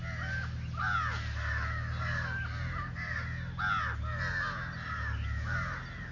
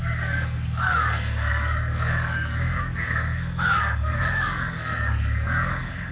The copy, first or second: second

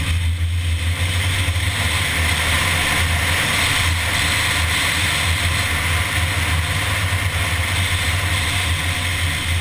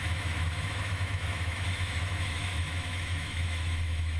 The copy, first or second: second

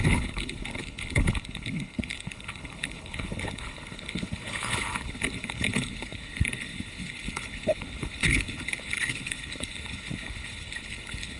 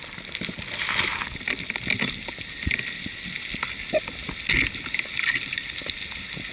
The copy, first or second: first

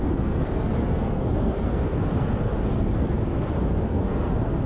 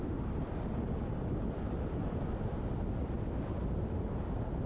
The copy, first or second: first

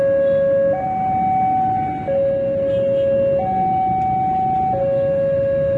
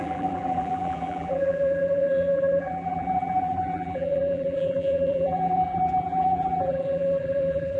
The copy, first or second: second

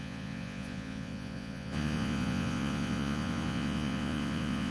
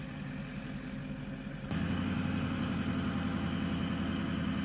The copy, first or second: first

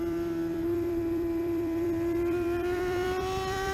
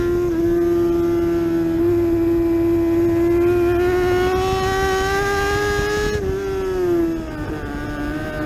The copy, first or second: first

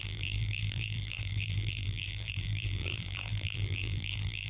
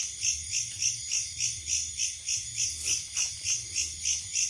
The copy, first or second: first